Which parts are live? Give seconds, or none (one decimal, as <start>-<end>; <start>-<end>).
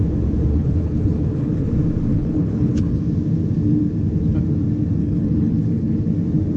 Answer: 0.0-0.5; 1.7-2.1; 3.0-5.0; 6.1-6.6